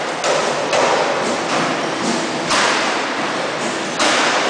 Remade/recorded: recorded